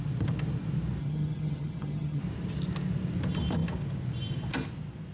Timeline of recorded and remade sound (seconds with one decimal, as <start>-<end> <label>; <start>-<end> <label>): 0.0-1.0 recorded; 1.0-2.2 remade; 2.2-5.1 recorded